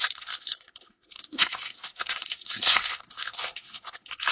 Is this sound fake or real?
fake